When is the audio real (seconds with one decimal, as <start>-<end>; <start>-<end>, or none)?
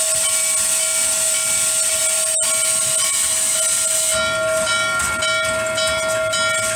0.0-6.8